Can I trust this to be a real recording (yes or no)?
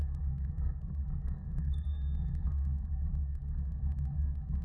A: no